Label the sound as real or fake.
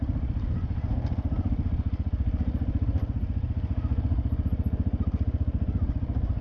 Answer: real